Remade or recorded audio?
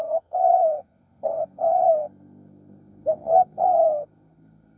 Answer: remade